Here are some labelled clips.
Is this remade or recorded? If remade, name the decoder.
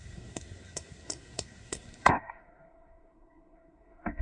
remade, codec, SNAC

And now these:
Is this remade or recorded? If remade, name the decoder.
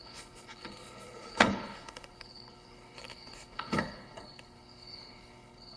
remade, codec, HILCodec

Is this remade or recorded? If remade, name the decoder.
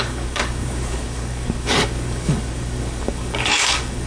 remade, codec, DAC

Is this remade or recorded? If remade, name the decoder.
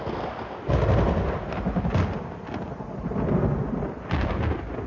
recorded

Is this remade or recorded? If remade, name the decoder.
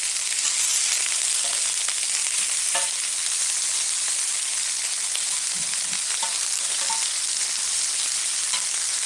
recorded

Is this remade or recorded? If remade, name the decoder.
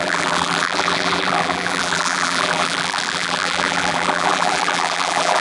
remade, vocoder, BigVGAN v2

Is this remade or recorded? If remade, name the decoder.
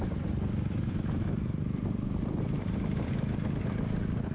remade, vocoder, BigVGAN v2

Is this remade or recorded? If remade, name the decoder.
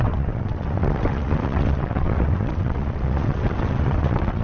remade, vocoder, WaveNeXt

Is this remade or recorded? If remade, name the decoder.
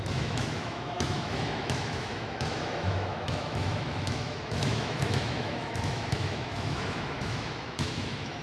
remade, autoencoder, DAC-VAE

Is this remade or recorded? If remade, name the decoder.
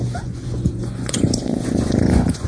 remade, vocoder, Vocos